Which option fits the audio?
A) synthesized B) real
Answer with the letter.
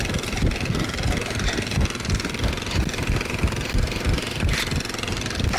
B